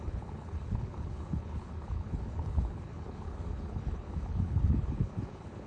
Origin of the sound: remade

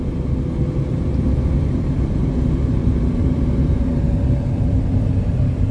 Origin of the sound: recorded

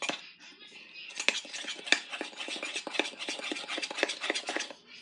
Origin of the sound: recorded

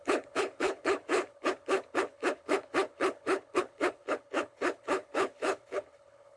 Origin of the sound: remade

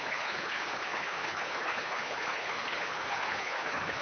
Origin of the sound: remade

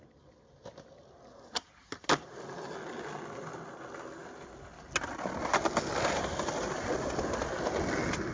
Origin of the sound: recorded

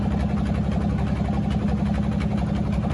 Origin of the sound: recorded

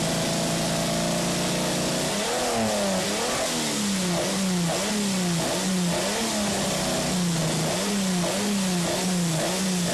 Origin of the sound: recorded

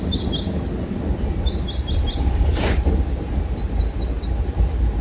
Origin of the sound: recorded